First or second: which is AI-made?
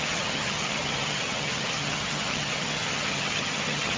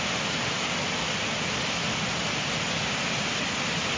first